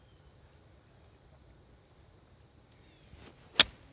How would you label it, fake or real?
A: real